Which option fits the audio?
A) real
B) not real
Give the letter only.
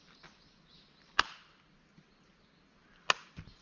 A